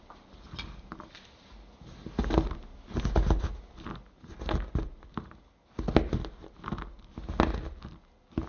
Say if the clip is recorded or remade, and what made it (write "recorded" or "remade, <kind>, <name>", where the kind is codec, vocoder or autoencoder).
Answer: recorded